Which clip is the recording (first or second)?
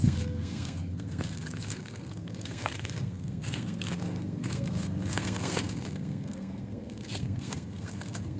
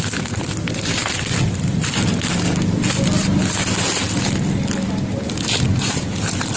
second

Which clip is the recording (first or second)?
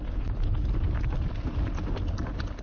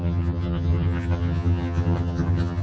first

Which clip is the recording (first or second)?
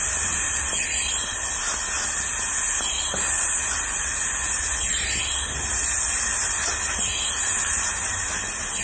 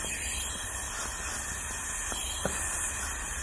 first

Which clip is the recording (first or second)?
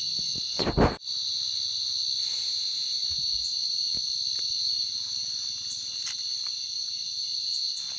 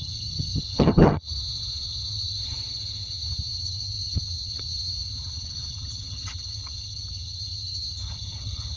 first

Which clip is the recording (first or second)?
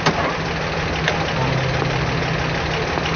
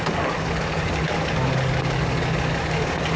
first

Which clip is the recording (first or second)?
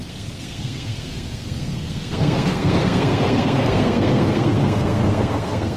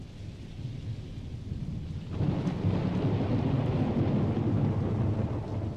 second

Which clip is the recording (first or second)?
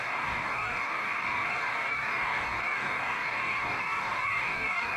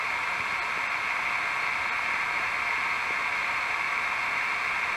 second